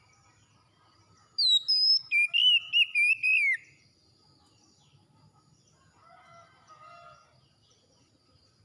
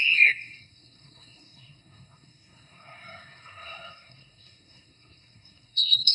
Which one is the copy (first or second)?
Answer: second